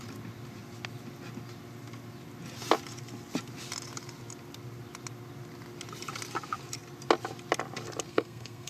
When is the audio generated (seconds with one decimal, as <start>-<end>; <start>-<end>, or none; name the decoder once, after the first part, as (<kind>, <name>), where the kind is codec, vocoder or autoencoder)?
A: 8.1-8.7 (codec, SNAC)